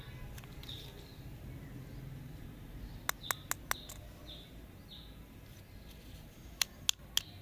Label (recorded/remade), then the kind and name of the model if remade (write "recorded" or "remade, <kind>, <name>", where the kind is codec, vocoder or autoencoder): recorded